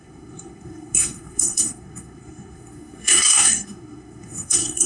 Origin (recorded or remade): remade